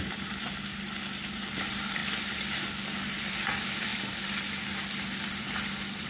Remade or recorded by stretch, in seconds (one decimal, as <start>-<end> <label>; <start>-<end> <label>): 0.0-6.1 recorded